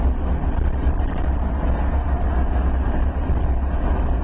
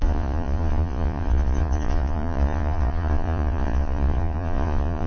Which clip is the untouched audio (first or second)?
first